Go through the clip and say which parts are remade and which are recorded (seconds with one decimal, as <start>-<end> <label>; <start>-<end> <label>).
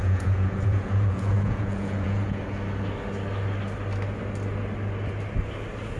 0.0-2.4 remade; 2.4-6.0 recorded